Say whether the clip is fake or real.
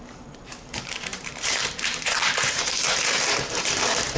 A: fake